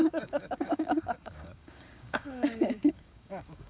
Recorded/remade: remade